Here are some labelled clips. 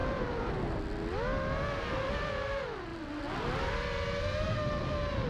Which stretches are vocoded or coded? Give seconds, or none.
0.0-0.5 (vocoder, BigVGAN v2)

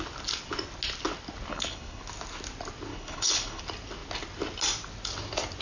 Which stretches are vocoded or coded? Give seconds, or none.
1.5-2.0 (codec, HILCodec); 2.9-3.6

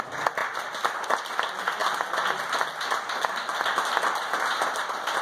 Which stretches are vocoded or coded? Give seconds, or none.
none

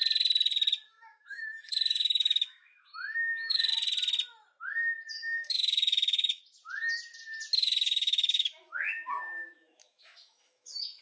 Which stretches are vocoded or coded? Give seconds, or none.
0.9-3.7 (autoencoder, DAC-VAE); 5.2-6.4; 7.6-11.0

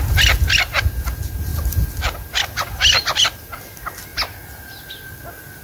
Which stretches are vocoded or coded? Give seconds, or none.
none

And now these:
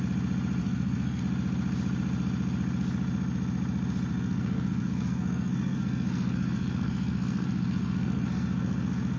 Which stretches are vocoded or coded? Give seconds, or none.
0.6-1.2 (codec, SNAC); 4.1-9.2